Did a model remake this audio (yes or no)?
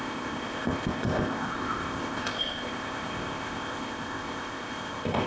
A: yes